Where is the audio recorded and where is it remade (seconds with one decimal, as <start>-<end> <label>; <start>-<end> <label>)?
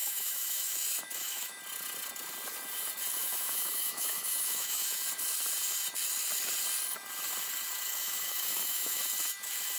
0.0-1.6 remade; 1.6-3.2 recorded; 3.2-5.1 remade; 5.1-8.0 recorded; 8.0-9.0 remade; 9.0-9.8 recorded